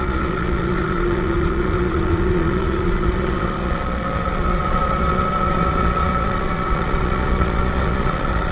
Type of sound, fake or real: fake